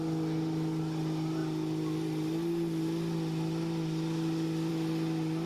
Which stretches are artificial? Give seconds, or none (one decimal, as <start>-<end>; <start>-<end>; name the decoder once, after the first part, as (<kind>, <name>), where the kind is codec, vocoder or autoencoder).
none